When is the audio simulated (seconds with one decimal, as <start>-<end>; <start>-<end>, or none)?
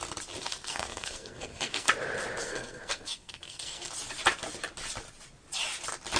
0.4-1.9; 2.4-3.9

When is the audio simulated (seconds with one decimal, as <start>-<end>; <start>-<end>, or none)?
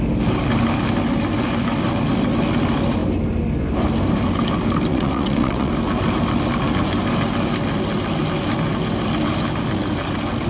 4.9-5.7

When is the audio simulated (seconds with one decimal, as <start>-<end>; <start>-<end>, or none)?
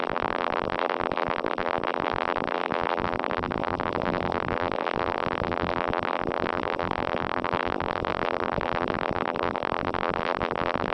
0.0-10.9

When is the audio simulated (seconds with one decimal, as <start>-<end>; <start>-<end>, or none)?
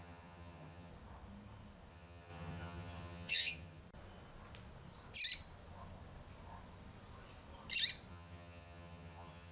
0.0-0.9; 1.9-3.8; 8.1-9.5